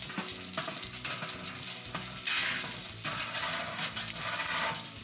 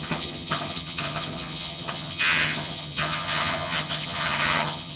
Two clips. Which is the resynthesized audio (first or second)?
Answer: second